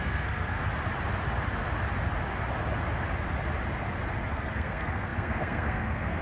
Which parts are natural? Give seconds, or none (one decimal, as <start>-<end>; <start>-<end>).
0.6-4.3